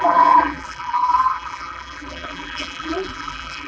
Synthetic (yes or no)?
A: yes